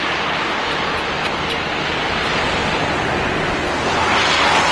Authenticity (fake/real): real